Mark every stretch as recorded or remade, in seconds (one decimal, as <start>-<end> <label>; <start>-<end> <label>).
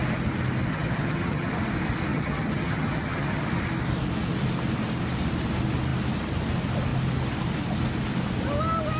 0.0-0.7 recorded; 0.7-1.5 remade; 1.5-2.1 recorded; 2.1-3.4 remade; 3.4-9.0 recorded